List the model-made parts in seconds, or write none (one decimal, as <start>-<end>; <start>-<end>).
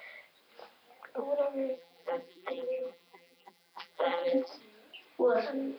1.7-4.5